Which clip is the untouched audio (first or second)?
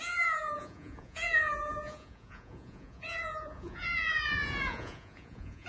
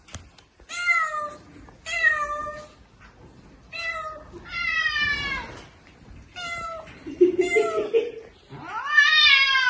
second